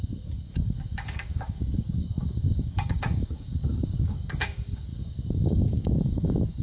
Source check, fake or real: fake